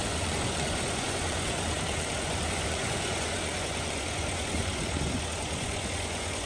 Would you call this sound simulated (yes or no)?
yes